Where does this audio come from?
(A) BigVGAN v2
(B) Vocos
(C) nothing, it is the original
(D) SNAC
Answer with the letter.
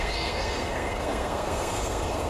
D